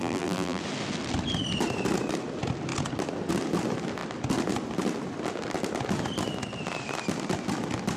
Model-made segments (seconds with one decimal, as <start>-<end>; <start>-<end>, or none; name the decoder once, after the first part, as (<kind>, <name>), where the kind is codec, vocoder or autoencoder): 0.0-0.6 (vocoder, BigVGAN v2)